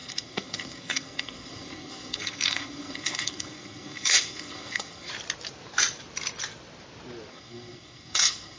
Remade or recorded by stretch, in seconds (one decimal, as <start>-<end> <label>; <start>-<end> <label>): 0.0-5.1 remade; 5.1-7.3 recorded; 7.3-8.6 remade